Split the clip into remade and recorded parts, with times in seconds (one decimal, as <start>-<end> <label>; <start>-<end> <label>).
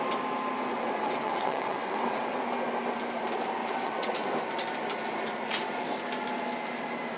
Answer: 0.0-0.7 recorded; 0.7-2.4 remade; 2.4-3.6 recorded; 3.6-4.3 remade; 4.3-7.2 recorded